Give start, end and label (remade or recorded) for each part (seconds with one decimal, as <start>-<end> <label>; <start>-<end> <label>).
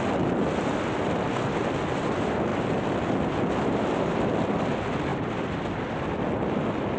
0.0-2.5 recorded; 2.5-4.6 remade; 4.6-5.1 recorded; 5.1-5.7 remade; 5.7-7.0 recorded